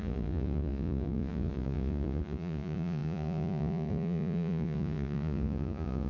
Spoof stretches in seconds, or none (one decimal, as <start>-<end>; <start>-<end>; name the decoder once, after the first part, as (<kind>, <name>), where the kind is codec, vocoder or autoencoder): 0.0-6.1 (vocoder, Vocos)